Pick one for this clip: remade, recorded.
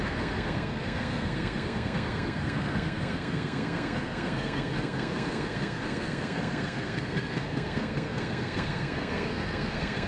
remade